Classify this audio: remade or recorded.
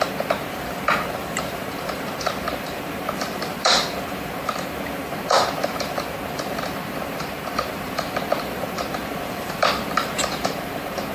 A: remade